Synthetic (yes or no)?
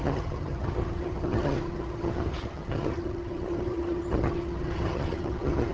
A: yes